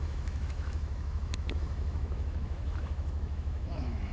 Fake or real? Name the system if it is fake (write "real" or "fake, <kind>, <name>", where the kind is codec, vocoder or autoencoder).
fake, autoencoder, DAC-VAE